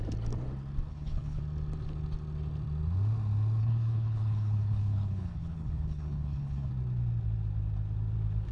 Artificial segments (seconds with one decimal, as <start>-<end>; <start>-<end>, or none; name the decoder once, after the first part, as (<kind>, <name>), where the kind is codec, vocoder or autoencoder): 0.9-1.4 (codec, HILCodec); 3.6-6.7